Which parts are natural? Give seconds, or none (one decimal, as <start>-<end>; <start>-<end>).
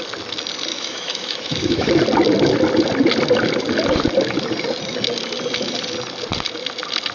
0.0-0.7; 1.9-7.1